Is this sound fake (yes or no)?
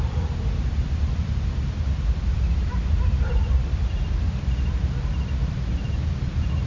yes